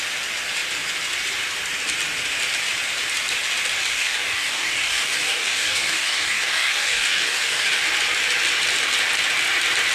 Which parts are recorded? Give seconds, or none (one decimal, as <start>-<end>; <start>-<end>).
0.0-3.8; 7.8-9.9